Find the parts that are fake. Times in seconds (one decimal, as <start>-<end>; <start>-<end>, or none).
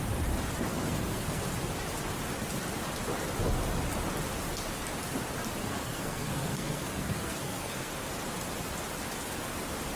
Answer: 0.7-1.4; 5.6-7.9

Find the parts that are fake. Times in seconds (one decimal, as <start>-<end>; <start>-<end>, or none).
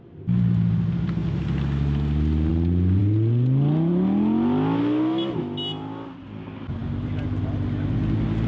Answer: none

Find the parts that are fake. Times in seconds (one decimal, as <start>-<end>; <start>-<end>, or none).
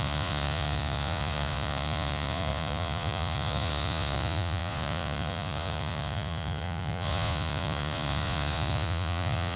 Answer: 0.0-9.6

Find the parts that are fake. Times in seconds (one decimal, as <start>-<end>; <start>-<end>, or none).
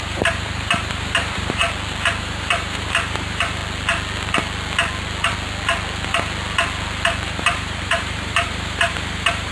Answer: 0.0-1.6; 2.2-3.6; 7.2-9.5